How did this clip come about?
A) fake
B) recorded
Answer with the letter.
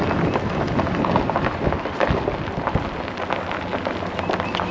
B